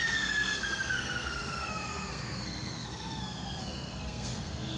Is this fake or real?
fake